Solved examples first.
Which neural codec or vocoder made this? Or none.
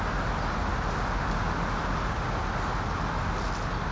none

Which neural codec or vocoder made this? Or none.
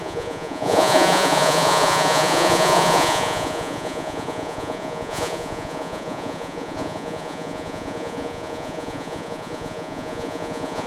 vocoder, Vocos